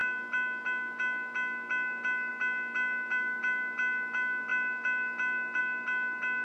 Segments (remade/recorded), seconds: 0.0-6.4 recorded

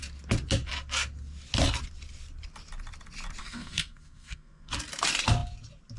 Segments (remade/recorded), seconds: 0.0-3.4 recorded; 3.4-4.7 remade; 4.7-6.0 recorded

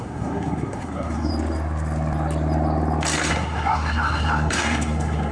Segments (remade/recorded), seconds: 0.0-1.3 remade; 1.3-3.3 recorded; 3.3-5.3 remade

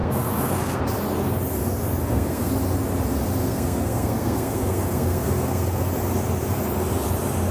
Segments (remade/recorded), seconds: 0.0-0.8 remade; 0.8-2.0 recorded; 2.0-2.5 remade; 2.5-3.4 recorded; 3.4-5.9 remade; 5.9-7.5 recorded

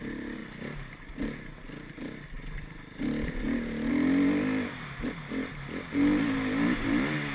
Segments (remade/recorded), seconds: 0.0-7.3 recorded

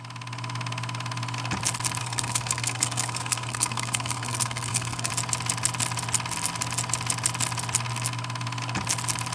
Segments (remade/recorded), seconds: 0.0-2.0 recorded; 2.0-5.1 remade; 5.1-9.3 recorded

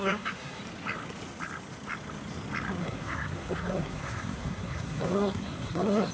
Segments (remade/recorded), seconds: 0.0-0.6 remade; 0.6-2.8 recorded; 2.8-6.1 remade

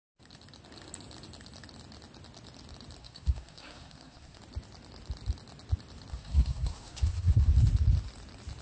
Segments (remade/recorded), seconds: 0.0-3.0 recorded; 3.0-4.4 remade; 4.4-6.1 recorded; 6.1-7.5 remade; 7.5-8.6 recorded